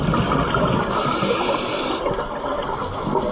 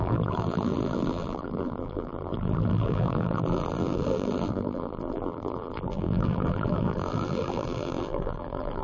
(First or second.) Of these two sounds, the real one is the first